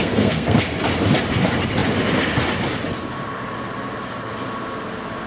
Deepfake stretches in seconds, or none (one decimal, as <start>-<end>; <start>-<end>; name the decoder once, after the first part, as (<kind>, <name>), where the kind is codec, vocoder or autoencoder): 0.0-0.8 (codec, SNAC)